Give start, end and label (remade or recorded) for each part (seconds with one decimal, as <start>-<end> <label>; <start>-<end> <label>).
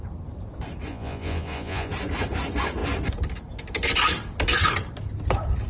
0.0-0.9 recorded; 0.9-1.9 remade; 1.9-5.7 recorded